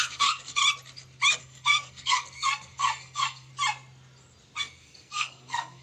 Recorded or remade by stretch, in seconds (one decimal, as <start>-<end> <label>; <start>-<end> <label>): 0.0-0.6 remade; 0.6-1.4 recorded; 1.4-3.5 remade; 3.5-4.6 recorded; 4.6-5.8 remade